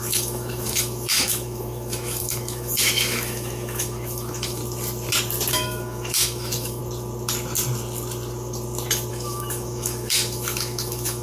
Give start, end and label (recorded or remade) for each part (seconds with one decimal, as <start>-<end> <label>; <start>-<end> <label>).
0.0-4.6 remade; 4.6-5.5 recorded; 5.5-6.8 remade; 6.8-9.1 recorded; 9.1-11.2 remade

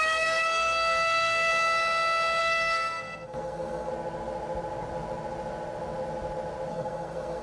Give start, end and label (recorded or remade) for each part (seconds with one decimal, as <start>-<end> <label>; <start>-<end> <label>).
0.0-1.5 remade; 1.5-2.4 recorded; 2.4-3.9 remade; 3.9-6.7 recorded; 6.7-7.4 remade

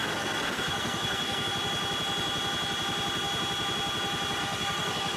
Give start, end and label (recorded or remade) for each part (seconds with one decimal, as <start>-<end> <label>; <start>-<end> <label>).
0.0-1.5 remade; 1.5-4.4 recorded; 4.4-5.2 remade

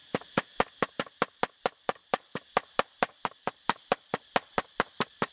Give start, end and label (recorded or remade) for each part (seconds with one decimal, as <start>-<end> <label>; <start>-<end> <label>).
0.0-5.3 recorded

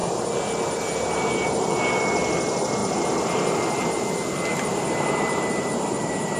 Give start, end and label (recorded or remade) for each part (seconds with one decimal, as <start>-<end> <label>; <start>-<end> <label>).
0.0-2.8 recorded; 2.8-3.3 remade; 3.3-4.5 recorded; 4.5-6.4 remade

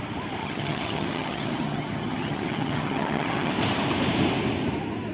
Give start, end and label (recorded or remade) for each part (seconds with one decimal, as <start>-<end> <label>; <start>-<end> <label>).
0.0-0.4 recorded; 0.4-3.5 remade; 3.5-5.1 recorded

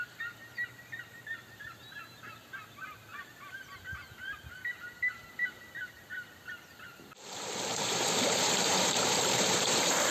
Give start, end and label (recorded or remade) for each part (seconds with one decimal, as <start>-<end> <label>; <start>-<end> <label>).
0.0-3.1 recorded; 3.1-3.8 remade; 3.8-7.7 recorded; 7.7-10.1 remade